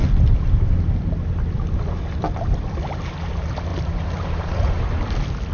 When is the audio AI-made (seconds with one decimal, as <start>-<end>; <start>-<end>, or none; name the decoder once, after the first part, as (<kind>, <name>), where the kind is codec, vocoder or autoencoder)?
3.7-5.0 (vocoder, BigVGAN v2)